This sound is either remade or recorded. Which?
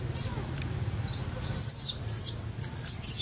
recorded